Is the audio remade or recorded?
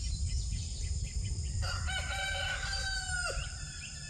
remade